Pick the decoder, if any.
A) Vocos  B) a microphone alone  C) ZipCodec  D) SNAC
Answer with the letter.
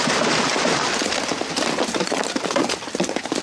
B